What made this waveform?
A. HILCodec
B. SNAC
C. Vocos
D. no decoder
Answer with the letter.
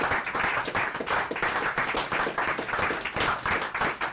D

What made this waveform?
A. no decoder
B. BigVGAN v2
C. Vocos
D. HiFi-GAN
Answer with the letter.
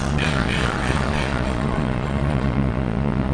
C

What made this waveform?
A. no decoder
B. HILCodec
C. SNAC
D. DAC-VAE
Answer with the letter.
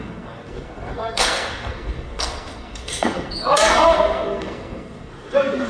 C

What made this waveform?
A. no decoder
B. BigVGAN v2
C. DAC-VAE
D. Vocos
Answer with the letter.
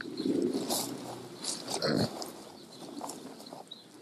A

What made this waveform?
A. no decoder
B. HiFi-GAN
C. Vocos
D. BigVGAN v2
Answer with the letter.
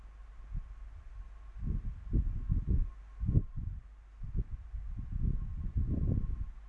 A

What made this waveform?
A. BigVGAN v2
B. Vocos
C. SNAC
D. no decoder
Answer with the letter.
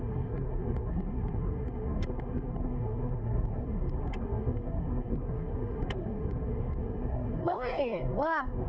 C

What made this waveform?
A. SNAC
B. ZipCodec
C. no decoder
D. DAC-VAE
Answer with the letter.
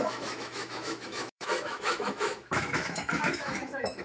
D